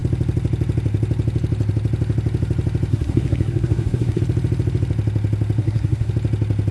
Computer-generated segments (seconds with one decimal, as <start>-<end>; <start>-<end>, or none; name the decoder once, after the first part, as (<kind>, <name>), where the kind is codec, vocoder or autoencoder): 2.9-4.2 (codec, SNAC); 5.6-6.1